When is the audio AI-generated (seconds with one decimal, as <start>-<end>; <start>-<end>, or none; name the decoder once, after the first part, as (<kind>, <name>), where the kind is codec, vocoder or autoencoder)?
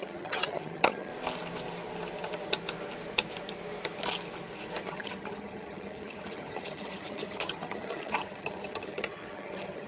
0.0-1.1 (vocoder, HiFi-GAN); 4.8-9.9